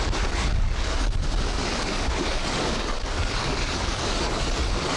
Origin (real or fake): fake